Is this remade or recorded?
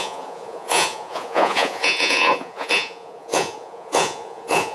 remade